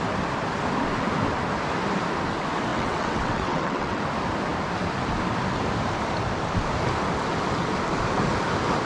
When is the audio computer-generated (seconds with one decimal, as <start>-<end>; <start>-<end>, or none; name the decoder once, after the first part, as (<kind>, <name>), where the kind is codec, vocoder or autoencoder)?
2.7-4.0 (vocoder, WaveNeXt)